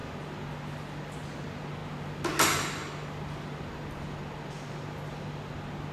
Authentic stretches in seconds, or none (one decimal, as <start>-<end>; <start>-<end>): 0.0-5.9